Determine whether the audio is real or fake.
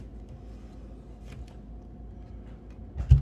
real